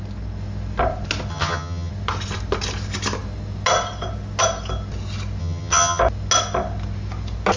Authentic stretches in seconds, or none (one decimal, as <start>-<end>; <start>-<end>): 0.0-1.3; 1.9-5.4; 6.0-7.6